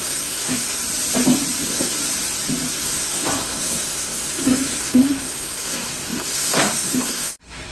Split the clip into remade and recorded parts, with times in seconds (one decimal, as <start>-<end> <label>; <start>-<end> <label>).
0.0-0.8 remade; 0.8-1.6 recorded; 1.6-2.0 remade; 2.0-2.7 recorded; 2.7-7.7 remade